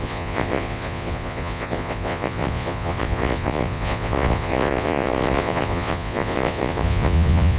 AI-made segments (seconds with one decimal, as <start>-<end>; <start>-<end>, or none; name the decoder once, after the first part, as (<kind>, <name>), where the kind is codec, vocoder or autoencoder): 0.0-7.6 (vocoder, Vocos)